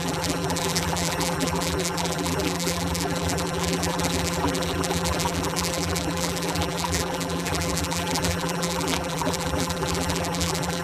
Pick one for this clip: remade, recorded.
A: remade